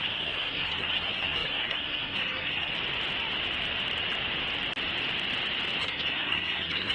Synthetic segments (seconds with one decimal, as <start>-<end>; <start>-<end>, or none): 0.0-2.7; 5.8-6.9